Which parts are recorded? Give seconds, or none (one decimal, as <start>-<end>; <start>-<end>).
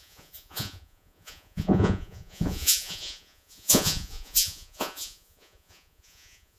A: none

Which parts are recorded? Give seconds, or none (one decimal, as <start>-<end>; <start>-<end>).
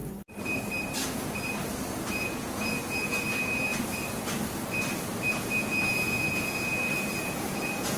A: 0.0-2.1; 3.7-5.3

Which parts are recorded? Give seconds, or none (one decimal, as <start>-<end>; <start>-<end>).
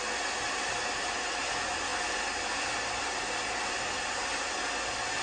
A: 0.0-5.2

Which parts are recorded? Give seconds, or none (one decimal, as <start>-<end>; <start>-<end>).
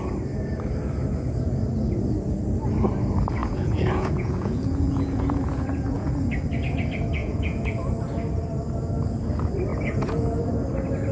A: 0.0-3.4; 6.1-7.2; 7.9-9.7; 10.4-11.1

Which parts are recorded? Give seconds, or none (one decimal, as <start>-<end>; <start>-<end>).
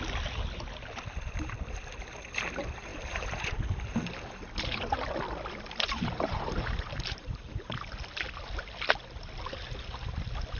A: 0.0-2.9; 3.9-5.9; 7.7-10.6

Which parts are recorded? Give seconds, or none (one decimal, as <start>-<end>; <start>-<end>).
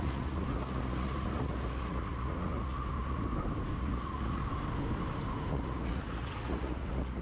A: 3.3-3.8; 4.4-5.5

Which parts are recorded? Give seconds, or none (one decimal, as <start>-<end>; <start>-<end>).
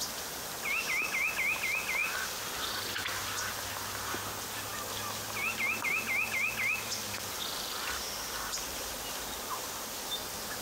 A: 0.0-10.6